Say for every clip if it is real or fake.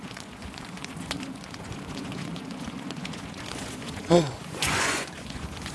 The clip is fake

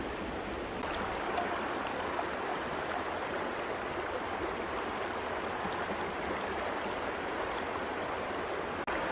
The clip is real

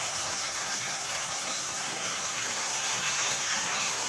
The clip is fake